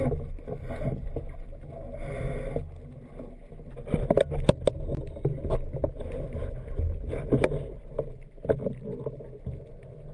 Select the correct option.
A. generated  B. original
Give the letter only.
B